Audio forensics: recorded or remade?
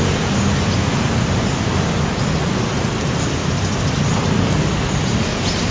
recorded